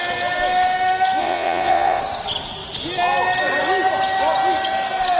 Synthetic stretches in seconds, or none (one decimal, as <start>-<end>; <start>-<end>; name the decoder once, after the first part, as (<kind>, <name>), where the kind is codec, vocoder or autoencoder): 1.2-2.0 (vocoder, Vocos)